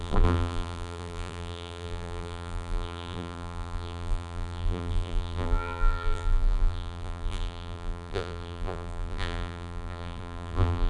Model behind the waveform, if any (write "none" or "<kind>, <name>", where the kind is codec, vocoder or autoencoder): vocoder, BigVGAN v2